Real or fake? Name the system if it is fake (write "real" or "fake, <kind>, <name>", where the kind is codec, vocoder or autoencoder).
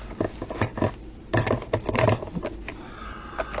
real